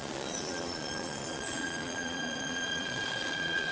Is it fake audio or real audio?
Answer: fake